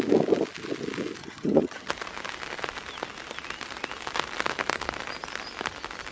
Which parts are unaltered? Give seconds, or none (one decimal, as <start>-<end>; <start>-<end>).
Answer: 0.0-1.2; 1.9-6.1

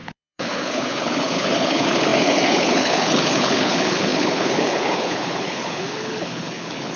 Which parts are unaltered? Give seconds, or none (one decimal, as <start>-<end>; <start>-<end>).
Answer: none

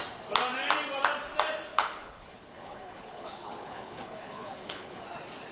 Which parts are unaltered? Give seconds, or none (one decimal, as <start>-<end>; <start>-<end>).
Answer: 0.0-1.7; 5.0-5.5

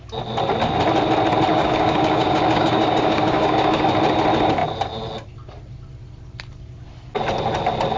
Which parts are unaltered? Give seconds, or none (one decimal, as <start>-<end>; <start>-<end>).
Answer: 0.0-1.5; 3.9-8.0

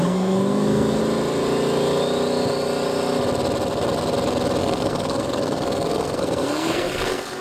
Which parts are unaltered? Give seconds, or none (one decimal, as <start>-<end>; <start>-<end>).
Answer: 1.0-4.6

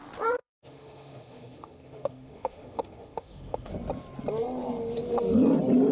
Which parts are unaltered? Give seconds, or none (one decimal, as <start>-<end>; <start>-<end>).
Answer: 0.0-0.4; 3.7-5.9

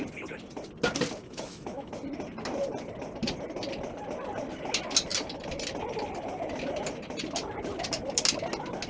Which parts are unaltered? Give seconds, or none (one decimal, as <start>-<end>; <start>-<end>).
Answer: 0.0-1.2; 1.9-8.9